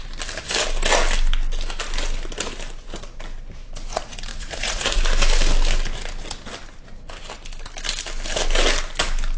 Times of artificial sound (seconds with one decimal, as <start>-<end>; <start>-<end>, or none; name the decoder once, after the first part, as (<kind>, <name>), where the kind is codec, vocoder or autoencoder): 4.3-5.0 (vocoder, Vocos)